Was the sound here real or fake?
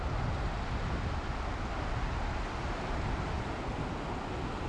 real